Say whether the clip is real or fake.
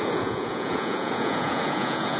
fake